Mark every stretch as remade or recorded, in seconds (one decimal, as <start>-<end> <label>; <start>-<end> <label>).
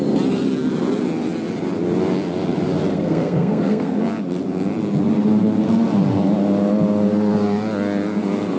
0.0-2.9 recorded; 2.9-4.0 remade; 4.0-8.6 recorded